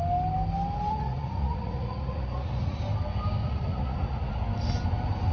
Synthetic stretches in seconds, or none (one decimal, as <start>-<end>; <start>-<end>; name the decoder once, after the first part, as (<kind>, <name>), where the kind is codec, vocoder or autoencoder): 0.9-2.8 (vocoder, Vocos); 3.4-4.3